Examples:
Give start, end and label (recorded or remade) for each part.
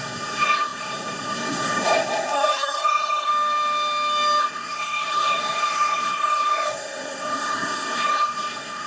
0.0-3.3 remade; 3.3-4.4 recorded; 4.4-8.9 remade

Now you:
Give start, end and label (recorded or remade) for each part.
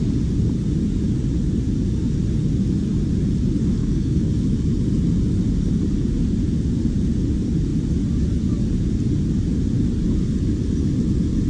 0.0-3.8 recorded; 3.8-4.3 remade; 4.3-11.5 recorded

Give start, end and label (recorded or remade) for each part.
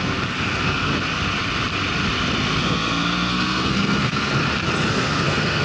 0.0-0.9 remade; 0.9-2.6 recorded; 2.6-4.3 remade; 4.3-4.9 recorded; 4.9-5.6 remade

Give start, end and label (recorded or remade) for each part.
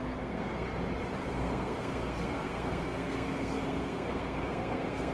0.0-0.7 remade; 0.7-1.3 recorded; 1.3-5.1 remade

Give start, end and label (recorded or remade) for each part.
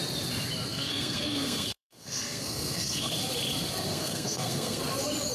0.0-0.7 recorded; 0.7-3.1 remade; 3.1-3.9 recorded; 3.9-4.8 remade; 4.8-5.3 recorded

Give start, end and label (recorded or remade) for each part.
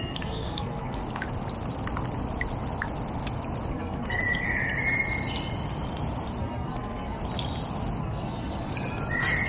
0.0-1.0 remade; 1.0-3.7 recorded; 3.7-4.2 remade; 4.2-6.4 recorded; 6.4-7.2 remade; 7.2-8.0 recorded; 8.0-8.7 remade; 8.7-9.5 recorded